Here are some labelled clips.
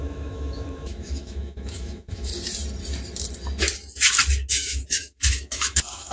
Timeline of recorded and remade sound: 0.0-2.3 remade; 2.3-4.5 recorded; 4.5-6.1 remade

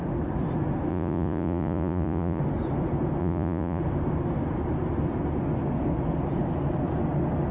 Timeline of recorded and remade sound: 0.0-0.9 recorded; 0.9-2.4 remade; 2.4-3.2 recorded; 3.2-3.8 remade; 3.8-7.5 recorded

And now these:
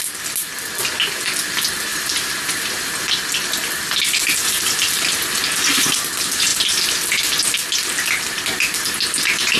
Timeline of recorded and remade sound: 0.0-1.9 recorded; 1.9-2.8 remade; 2.8-9.6 recorded

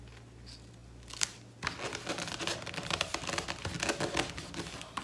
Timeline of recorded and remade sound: 0.0-5.0 recorded

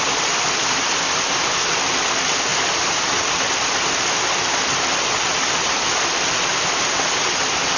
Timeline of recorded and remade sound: 0.0-7.8 recorded

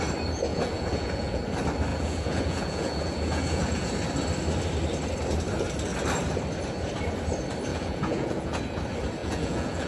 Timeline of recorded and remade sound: 0.0-0.5 recorded; 0.5-1.4 remade; 1.4-1.9 recorded; 1.9-3.9 remade; 3.9-7.7 recorded; 7.7-8.6 remade; 8.6-9.2 recorded; 9.2-9.9 remade